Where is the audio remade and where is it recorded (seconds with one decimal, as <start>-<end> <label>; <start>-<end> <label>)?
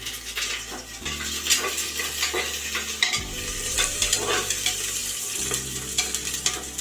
0.0-5.0 recorded; 5.0-6.0 remade; 6.0-6.8 recorded